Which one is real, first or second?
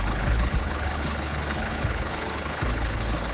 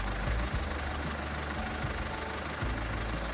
second